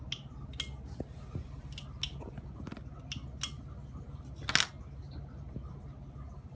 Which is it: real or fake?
real